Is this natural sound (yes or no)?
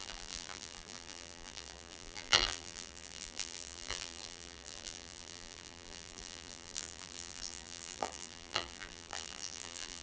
no